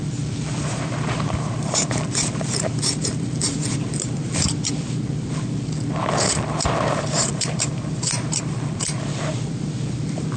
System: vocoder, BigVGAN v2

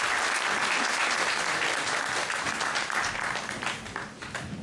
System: none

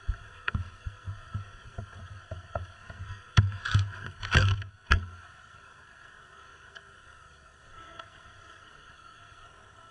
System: codec, SNAC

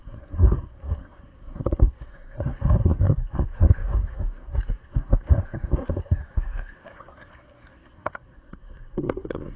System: codec, SNAC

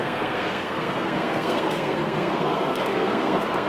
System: codec, SNAC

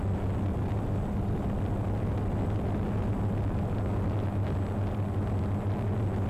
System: none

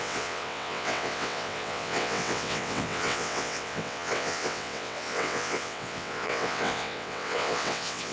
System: vocoder, WaveNeXt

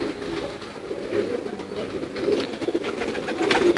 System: none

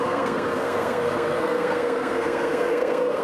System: codec, SNAC